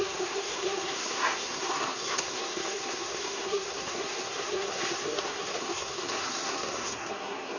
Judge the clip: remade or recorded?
remade